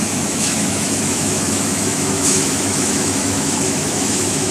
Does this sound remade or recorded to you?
remade